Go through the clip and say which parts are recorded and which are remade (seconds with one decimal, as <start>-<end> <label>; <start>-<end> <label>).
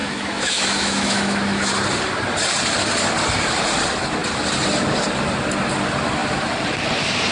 0.0-1.7 remade; 1.7-7.3 recorded